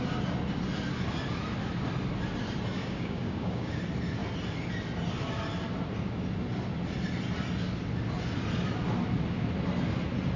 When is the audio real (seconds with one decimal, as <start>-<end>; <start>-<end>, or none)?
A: 0.0-2.8; 3.7-10.4